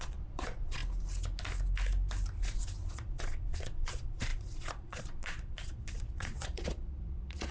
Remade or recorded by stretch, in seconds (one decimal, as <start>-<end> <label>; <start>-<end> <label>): 0.0-0.8 remade; 0.8-2.9 recorded; 2.9-7.5 remade